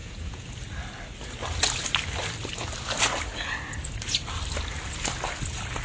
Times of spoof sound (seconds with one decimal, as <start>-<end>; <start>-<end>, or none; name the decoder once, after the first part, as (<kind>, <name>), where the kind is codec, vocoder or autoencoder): 0.0-0.5 (vocoder, Vocos)